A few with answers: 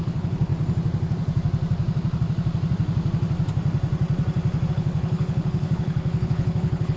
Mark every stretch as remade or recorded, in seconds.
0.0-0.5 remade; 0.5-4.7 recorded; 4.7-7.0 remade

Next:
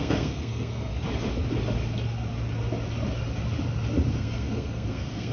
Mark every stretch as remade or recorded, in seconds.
0.0-0.9 remade; 0.9-4.1 recorded; 4.1-5.3 remade

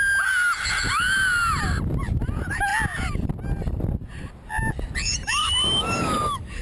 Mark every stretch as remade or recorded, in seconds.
0.0-5.4 recorded; 5.4-6.6 remade

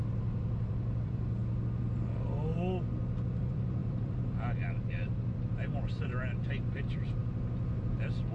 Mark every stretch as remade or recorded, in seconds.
0.0-1.4 remade; 1.4-3.4 recorded; 3.4-7.2 remade; 7.2-7.8 recorded; 7.8-8.3 remade